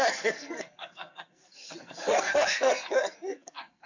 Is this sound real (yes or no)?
no